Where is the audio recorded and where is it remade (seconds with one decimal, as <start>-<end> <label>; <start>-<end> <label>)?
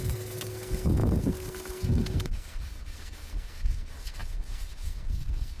0.0-5.6 remade